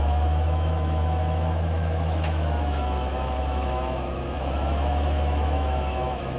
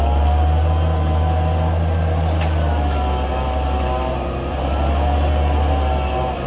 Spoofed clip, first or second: first